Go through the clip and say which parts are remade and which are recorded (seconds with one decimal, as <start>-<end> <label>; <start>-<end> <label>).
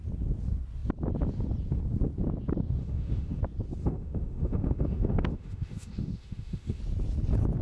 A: 0.0-2.8 recorded; 2.8-3.4 remade; 3.4-3.8 recorded; 3.8-6.8 remade; 6.8-7.6 recorded